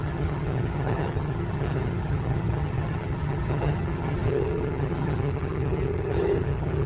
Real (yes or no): no